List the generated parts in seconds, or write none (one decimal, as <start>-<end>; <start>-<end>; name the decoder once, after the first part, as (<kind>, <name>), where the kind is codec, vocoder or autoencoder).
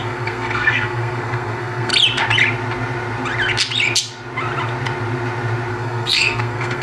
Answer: 0.0-1.9 (codec, SNAC); 5.7-6.8